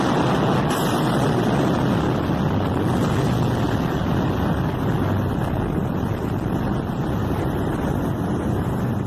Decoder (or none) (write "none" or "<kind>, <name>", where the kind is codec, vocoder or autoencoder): none